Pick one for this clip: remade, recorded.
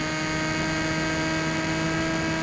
recorded